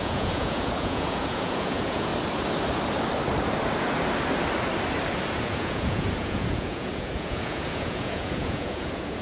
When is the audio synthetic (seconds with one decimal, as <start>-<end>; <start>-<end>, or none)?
0.0-2.1; 5.3-9.2